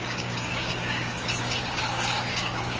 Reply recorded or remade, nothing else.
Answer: remade